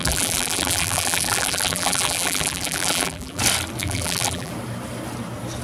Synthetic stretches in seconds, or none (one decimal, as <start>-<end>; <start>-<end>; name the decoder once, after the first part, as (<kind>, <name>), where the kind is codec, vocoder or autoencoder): 0.0-3.4 (vocoder, BigVGAN v2); 3.8-4.5